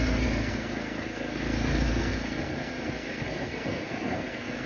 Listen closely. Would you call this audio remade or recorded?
remade